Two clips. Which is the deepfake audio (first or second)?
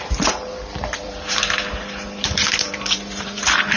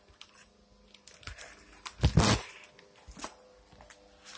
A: first